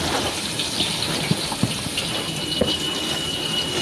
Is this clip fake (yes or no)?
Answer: yes